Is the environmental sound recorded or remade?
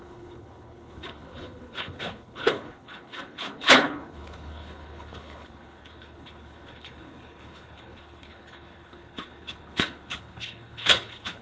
remade